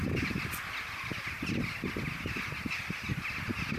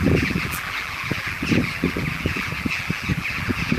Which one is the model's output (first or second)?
second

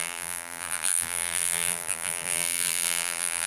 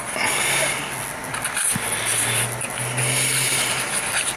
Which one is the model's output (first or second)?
first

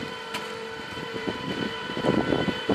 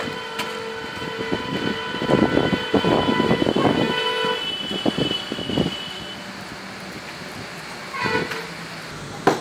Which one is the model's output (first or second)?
first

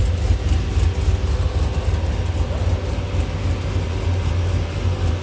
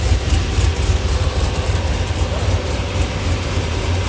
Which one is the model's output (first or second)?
second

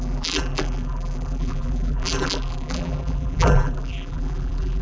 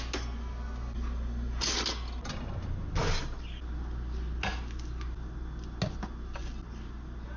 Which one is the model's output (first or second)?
first